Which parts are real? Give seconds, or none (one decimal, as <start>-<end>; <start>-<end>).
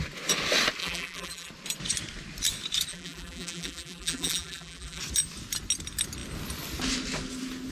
0.0-0.8; 1.5-2.9; 5.0-7.7